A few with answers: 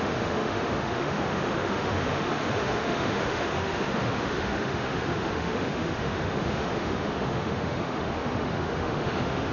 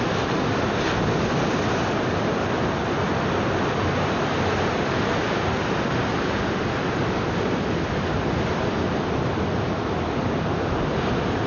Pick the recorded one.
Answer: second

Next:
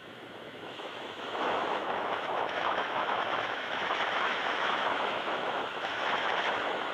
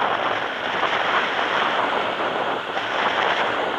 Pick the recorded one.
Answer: second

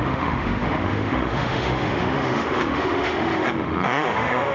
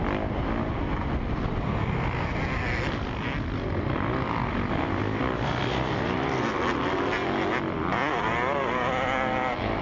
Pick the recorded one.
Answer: second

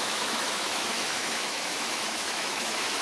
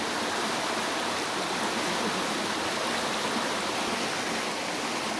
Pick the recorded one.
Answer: second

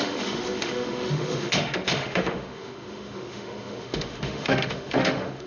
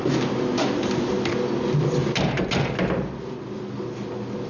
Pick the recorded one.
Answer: second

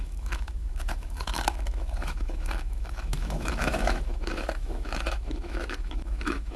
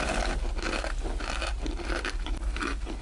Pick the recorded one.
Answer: second